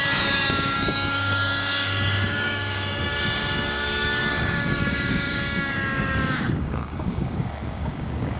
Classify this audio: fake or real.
fake